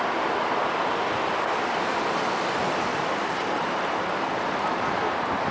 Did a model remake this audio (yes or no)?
no